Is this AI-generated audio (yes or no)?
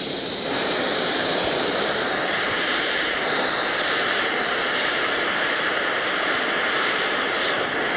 yes